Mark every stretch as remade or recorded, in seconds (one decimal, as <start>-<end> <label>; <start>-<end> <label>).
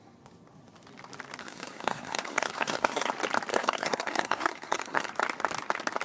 0.0-1.4 recorded; 1.4-3.1 remade; 3.1-3.5 recorded; 3.5-5.1 remade; 5.1-6.0 recorded